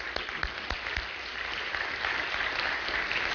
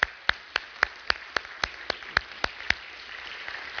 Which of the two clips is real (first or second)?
first